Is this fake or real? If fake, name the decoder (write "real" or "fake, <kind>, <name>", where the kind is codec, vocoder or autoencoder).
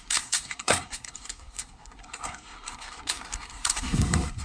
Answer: fake, codec, SNAC